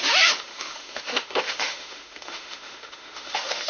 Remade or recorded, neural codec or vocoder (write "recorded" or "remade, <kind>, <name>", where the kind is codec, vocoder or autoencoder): remade, autoencoder, DAC-VAE